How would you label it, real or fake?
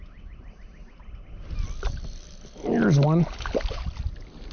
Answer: real